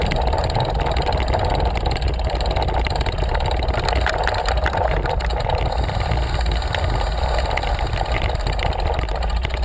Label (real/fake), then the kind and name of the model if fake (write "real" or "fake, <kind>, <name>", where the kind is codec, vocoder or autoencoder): real